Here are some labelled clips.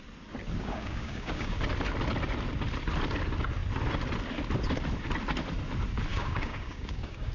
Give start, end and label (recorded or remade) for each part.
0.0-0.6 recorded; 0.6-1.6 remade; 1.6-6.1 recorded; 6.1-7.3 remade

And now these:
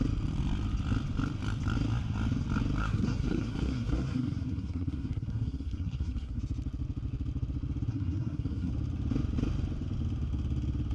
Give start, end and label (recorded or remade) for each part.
0.0-2.8 recorded; 2.8-6.4 remade; 6.4-7.9 recorded; 7.9-8.7 remade; 8.7-10.9 recorded

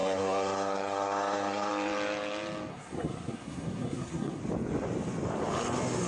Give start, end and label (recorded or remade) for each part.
0.0-1.7 remade; 1.7-2.7 recorded; 2.7-4.4 remade; 4.4-6.1 recorded

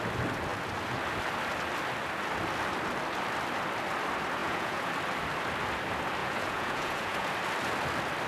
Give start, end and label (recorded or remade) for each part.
0.0-4.4 recorded; 4.4-4.9 remade; 4.9-6.2 recorded; 6.2-7.3 remade; 7.3-8.3 recorded

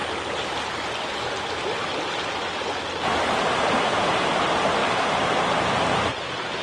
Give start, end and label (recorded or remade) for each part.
0.0-6.6 recorded

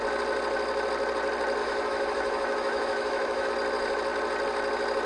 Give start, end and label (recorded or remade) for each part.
0.0-1.6 recorded; 1.6-3.5 remade; 3.5-5.1 recorded

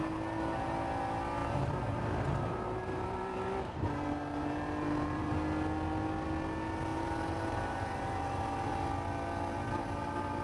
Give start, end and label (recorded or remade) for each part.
0.0-1.4 recorded; 1.4-5.3 remade; 5.3-6.9 recorded; 6.9-8.7 remade; 8.7-10.4 recorded